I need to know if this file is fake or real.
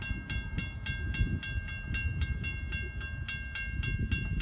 real